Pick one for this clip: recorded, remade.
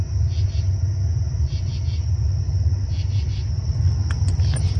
recorded